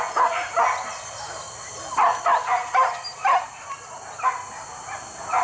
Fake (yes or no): no